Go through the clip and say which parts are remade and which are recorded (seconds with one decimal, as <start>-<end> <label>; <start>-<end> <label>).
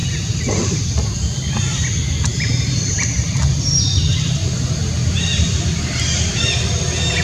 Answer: 0.0-2.3 recorded; 2.3-3.4 remade; 3.4-4.8 recorded; 4.8-6.4 remade; 6.4-7.2 recorded